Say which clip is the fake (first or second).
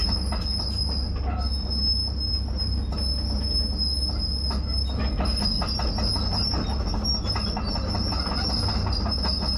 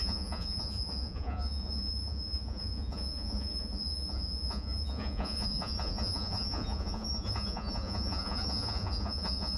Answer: second